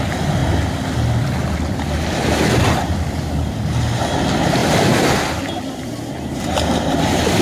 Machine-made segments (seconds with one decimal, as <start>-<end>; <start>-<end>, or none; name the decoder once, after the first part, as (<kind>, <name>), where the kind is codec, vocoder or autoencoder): none